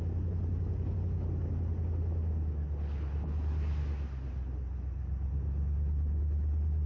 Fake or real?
real